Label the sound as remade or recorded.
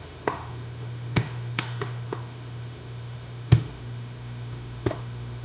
remade